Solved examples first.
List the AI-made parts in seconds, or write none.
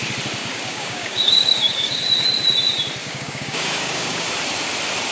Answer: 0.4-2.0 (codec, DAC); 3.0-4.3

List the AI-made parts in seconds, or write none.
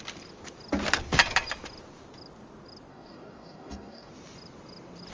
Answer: 2.9-4.1 (codec, DAC)